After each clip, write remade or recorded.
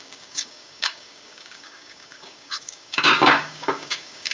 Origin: remade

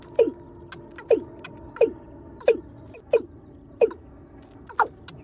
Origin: recorded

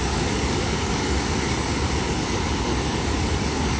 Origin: remade